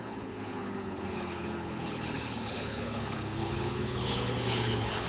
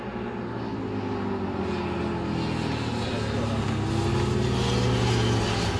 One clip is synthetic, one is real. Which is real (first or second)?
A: second